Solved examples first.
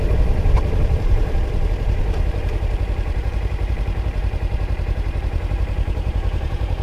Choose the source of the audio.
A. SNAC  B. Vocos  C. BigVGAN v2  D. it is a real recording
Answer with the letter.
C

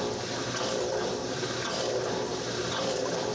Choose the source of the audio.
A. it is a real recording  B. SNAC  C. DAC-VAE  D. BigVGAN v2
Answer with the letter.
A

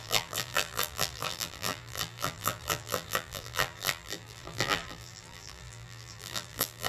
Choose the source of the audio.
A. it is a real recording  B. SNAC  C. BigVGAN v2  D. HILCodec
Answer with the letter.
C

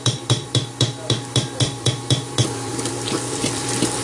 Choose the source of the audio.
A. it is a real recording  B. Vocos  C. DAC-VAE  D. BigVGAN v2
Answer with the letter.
D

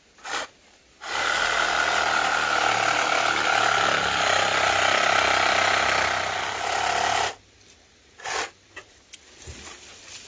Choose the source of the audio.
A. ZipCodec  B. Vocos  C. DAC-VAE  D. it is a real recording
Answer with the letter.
D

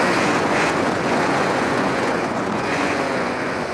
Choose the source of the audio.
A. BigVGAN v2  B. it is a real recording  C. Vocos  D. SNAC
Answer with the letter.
C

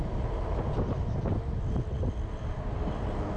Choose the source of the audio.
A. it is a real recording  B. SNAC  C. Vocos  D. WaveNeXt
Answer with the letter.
A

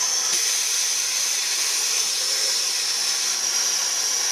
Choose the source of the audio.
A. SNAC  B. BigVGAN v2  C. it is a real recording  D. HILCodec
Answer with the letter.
C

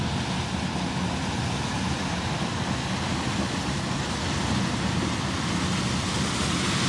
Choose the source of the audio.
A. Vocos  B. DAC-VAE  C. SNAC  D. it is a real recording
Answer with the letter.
D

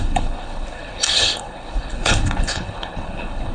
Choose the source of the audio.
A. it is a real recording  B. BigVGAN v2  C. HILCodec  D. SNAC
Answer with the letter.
C